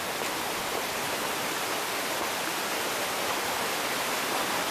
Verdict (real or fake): real